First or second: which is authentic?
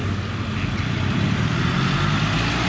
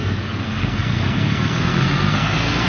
first